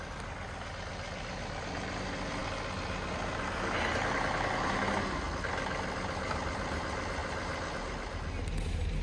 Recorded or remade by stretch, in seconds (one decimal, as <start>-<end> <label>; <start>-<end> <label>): 0.0-9.0 recorded